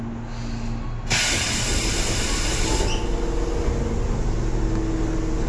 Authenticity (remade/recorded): recorded